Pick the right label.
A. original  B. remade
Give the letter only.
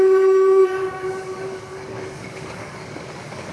B